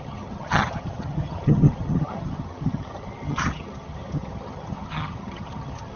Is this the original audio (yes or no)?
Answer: no